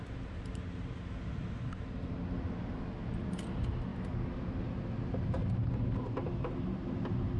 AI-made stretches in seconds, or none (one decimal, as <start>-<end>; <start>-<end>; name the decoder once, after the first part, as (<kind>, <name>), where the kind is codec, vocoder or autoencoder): none